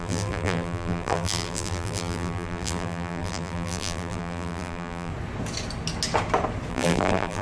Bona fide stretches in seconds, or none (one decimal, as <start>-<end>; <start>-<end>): 5.1-6.7